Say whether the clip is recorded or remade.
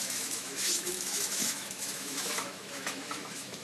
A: remade